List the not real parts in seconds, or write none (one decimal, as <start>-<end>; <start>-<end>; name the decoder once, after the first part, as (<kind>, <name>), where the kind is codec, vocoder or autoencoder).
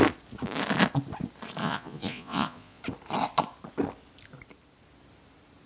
1.6-2.8 (vocoder, Vocos)